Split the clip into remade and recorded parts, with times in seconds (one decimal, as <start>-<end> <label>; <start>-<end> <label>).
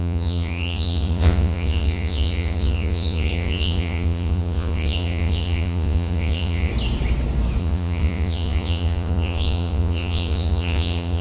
0.0-6.7 remade; 6.7-7.6 recorded; 7.6-11.2 remade